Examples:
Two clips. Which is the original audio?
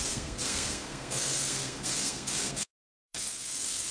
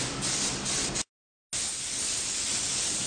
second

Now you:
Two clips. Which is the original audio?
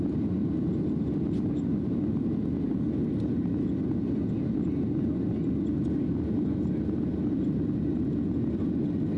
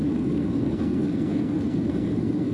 first